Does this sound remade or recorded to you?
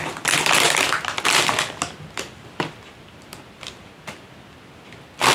recorded